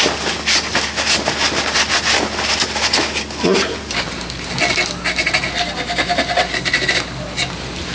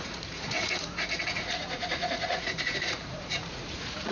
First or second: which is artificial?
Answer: second